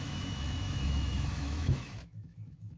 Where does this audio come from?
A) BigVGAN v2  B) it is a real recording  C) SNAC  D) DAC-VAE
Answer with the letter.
D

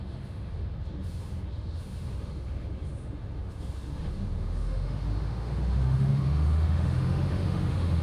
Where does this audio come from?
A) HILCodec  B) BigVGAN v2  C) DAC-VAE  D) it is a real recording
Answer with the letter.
C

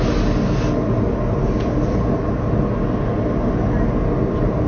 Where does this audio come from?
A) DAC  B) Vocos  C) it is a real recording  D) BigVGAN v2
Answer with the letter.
C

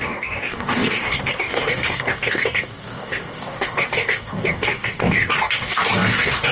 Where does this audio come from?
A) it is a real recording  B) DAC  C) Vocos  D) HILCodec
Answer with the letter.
B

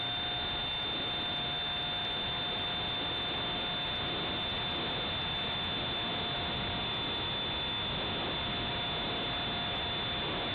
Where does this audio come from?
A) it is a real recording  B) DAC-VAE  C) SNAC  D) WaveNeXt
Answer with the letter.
A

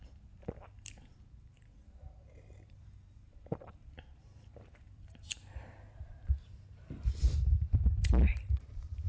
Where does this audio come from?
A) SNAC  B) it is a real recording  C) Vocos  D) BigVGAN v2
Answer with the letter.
D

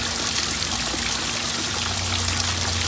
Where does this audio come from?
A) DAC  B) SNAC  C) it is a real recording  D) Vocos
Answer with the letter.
C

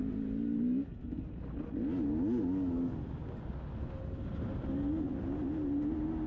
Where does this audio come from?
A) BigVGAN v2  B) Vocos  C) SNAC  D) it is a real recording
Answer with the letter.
D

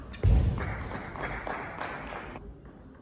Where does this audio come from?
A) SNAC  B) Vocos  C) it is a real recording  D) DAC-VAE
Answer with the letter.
C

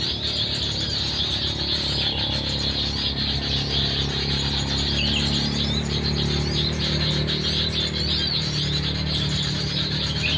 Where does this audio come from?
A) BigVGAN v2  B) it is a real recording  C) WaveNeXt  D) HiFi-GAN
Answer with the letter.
B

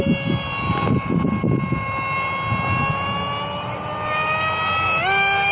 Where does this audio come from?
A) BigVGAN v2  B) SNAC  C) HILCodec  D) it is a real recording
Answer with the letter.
D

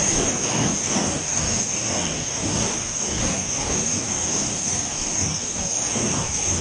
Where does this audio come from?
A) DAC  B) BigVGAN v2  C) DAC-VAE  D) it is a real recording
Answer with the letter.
A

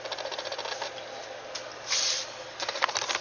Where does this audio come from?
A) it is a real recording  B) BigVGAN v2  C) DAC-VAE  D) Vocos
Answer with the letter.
A